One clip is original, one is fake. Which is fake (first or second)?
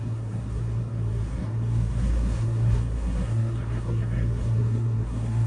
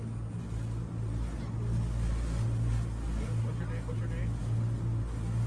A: first